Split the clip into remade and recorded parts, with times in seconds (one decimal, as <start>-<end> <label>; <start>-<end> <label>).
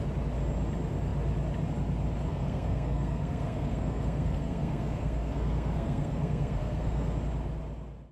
0.0-2.3 recorded; 2.3-7.1 remade; 7.1-8.1 recorded